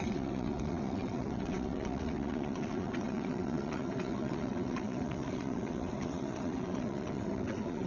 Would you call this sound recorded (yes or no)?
no